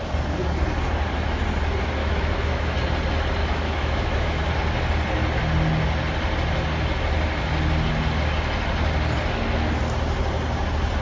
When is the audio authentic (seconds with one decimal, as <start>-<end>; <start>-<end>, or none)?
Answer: 0.0-2.0; 2.7-3.4; 4.5-11.0